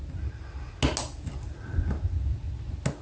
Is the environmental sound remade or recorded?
recorded